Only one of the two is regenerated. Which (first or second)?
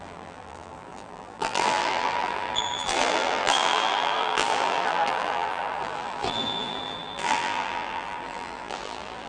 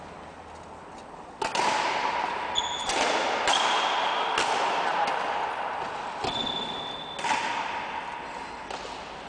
first